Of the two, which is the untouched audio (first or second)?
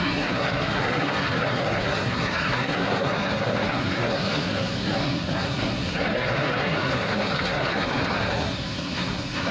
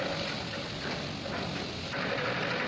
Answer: second